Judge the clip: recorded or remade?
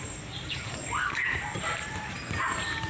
remade